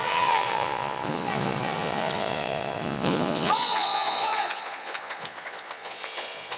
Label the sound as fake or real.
fake